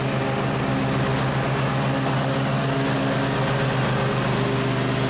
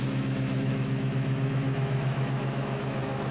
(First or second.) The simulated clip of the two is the second